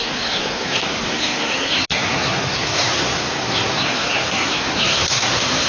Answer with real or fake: fake